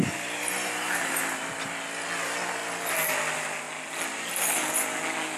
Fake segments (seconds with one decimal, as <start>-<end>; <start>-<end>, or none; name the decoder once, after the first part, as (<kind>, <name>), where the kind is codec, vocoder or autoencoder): none